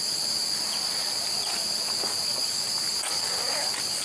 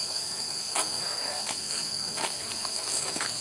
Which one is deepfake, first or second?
second